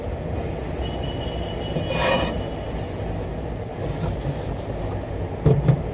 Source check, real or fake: real